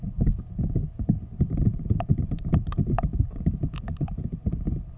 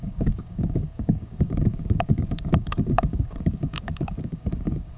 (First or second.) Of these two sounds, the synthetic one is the second